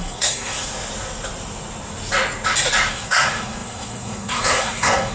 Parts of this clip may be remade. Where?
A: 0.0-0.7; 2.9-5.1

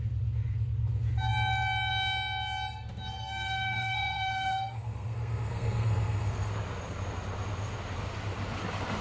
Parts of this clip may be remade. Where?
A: 3.2-6.5

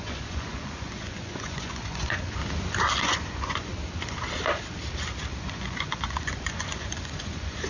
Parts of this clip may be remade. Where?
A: 0.0-2.4; 3.0-3.7; 5.4-7.7

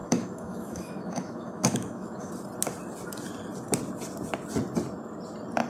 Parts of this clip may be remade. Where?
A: 0.0-2.3

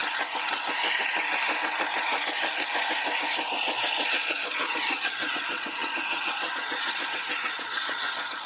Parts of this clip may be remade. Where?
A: 3.6-8.5

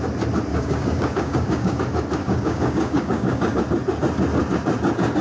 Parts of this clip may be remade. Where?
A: 0.5-1.8; 2.2-3.6

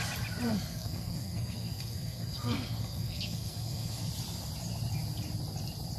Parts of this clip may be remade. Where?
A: 0.5-4.1

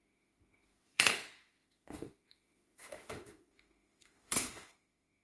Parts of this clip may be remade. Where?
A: 0.0-5.2